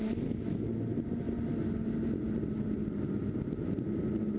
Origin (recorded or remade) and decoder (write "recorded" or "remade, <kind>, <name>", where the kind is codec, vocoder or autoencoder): recorded